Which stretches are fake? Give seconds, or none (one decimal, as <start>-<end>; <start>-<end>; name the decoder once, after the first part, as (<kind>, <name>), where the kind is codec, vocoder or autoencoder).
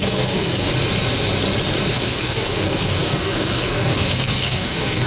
0.0-0.7 (codec, SNAC); 1.9-5.1